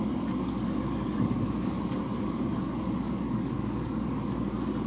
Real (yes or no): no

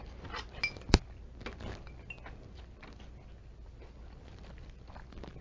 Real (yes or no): yes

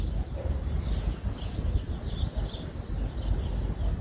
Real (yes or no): yes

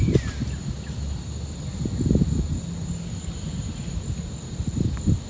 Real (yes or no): yes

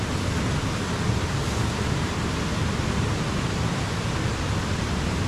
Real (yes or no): yes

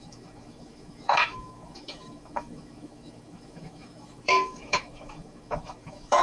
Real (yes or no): no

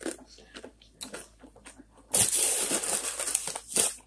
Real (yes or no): yes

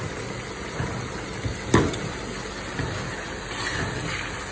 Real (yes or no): yes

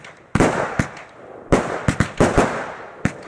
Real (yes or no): yes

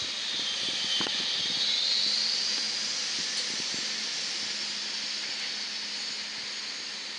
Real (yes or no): yes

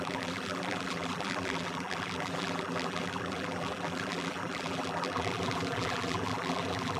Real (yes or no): no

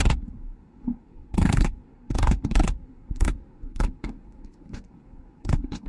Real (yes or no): no